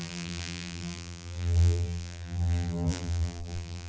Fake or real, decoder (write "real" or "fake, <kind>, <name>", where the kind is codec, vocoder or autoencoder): fake, vocoder, BigVGAN v2